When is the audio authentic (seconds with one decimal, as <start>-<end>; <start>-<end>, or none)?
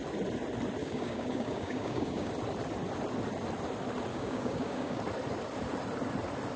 0.0-0.8; 2.3-4.1; 5.0-6.6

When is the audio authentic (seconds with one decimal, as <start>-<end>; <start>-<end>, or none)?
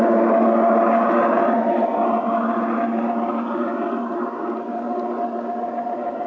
0.0-6.3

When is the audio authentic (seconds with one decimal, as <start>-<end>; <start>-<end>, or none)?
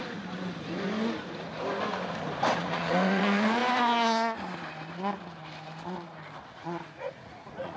0.0-2.6; 3.6-6.5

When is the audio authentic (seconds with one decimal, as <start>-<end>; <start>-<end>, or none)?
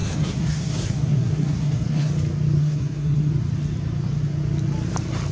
2.1-2.6; 3.3-5.3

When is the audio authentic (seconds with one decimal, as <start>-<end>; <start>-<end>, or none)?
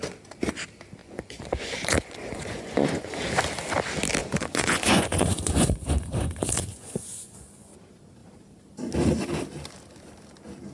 0.0-1.0; 3.2-4.2; 7.7-10.7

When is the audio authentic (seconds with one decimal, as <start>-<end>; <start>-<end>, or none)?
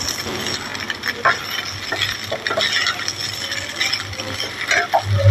0.0-5.3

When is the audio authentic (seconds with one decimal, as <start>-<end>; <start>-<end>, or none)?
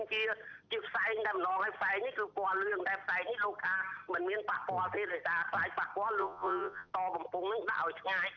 0.0-6.2; 6.9-8.4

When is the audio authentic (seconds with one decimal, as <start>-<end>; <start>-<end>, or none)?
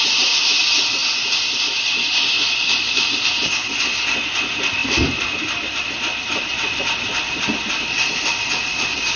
0.0-4.8; 8.3-9.2